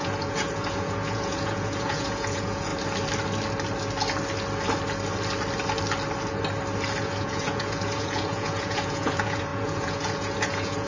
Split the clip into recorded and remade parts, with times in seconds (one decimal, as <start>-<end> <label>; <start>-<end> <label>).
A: 0.0-2.7 remade; 2.7-7.0 recorded; 7.0-10.9 remade